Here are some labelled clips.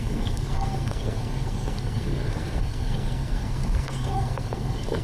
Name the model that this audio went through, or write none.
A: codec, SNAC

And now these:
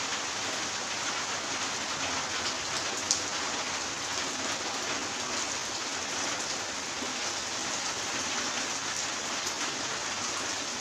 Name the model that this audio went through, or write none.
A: none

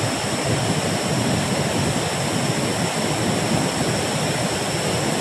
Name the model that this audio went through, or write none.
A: none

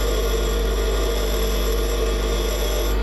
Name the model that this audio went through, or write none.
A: none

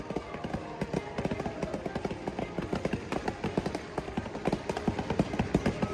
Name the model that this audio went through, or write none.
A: none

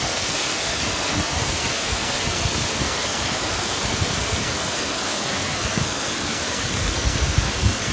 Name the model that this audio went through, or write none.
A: codec, SNAC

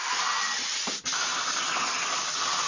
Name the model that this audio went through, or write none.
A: none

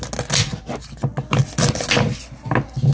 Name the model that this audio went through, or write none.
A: none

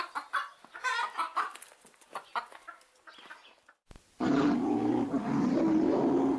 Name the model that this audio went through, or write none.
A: none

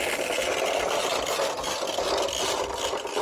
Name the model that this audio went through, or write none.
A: none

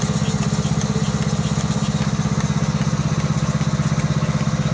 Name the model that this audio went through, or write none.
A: none